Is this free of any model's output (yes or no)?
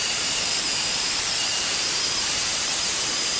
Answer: no